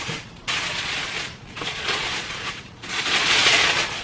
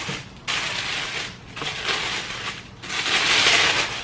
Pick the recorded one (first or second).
second